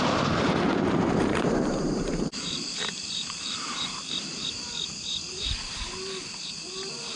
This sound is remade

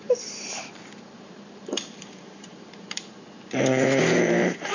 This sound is remade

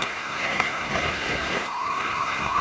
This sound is remade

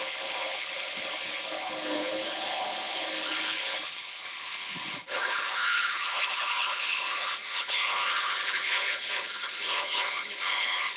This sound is remade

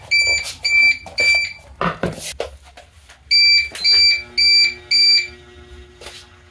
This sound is recorded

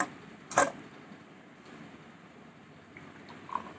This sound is recorded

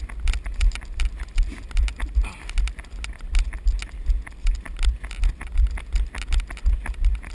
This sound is recorded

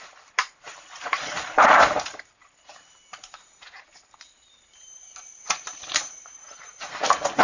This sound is remade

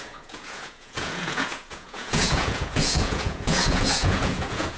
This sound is remade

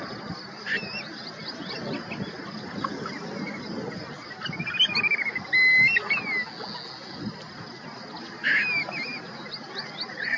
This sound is recorded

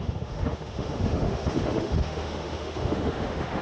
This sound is remade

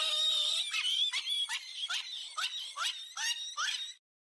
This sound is recorded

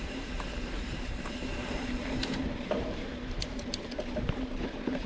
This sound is remade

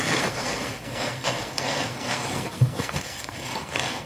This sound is remade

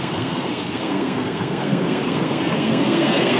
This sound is remade